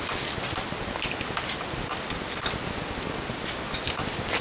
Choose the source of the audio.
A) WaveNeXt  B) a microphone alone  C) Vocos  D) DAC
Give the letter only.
B